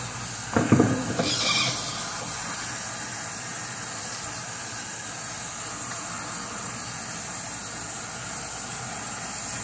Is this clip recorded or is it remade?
recorded